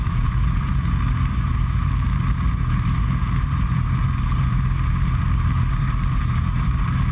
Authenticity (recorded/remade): remade